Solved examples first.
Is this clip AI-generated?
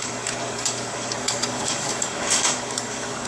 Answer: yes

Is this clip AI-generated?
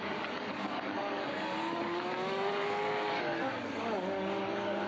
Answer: yes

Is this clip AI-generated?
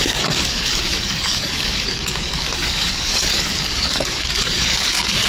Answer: yes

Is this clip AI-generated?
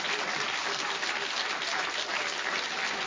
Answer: no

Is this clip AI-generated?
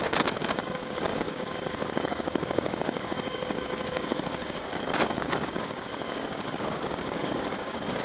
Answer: yes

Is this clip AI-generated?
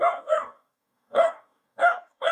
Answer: yes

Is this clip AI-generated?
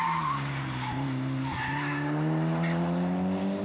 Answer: no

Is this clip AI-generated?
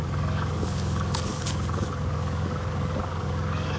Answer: yes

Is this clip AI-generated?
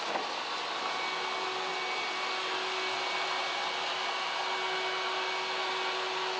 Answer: no